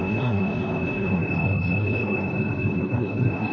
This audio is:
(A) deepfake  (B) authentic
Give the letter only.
A